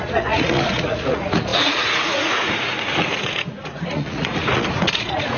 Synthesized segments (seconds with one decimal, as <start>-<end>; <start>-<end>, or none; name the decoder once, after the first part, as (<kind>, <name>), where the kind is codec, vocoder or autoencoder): 0.0-5.4 (vocoder, Vocos)